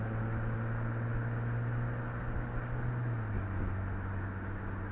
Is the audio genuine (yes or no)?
yes